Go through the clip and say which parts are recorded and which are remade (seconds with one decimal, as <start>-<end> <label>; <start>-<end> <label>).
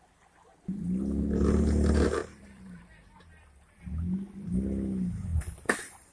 0.0-2.2 recorded; 2.2-3.8 remade; 3.8-5.3 recorded; 5.3-6.1 remade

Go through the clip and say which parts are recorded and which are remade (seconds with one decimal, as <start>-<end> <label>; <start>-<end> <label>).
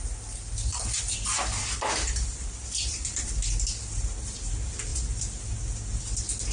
0.0-0.7 recorded; 0.7-3.5 remade; 3.5-4.9 recorded; 4.9-5.5 remade; 5.5-6.5 recorded